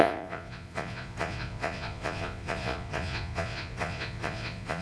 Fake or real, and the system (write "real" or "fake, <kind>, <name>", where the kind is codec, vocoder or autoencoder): fake, vocoder, Vocos